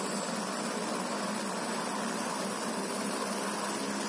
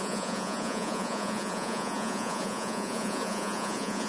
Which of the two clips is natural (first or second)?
first